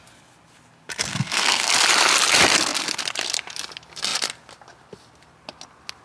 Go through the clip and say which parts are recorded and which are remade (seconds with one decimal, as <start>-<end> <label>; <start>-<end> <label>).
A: 0.0-1.1 recorded; 1.1-1.7 remade; 1.7-6.0 recorded